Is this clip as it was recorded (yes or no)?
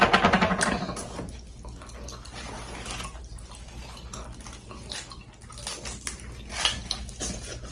yes